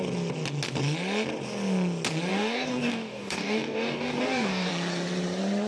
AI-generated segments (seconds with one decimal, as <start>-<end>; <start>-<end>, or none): 2.3-4.7